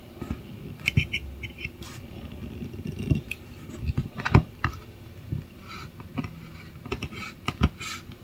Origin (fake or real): fake